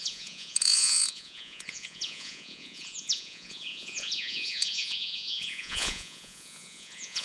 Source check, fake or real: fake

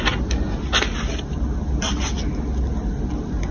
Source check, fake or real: real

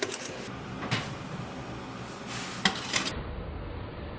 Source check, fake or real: real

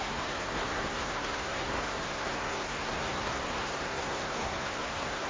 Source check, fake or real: fake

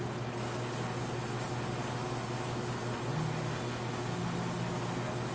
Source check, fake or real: real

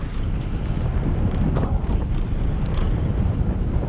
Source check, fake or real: real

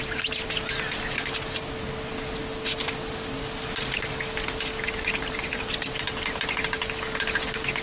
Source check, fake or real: real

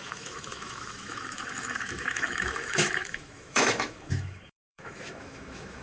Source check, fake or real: fake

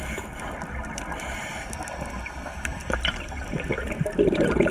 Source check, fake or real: real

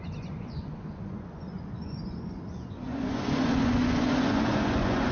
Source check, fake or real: fake